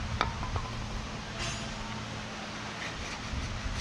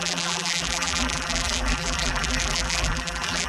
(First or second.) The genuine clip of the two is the first